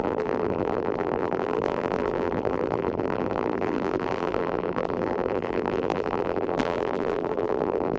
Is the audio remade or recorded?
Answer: remade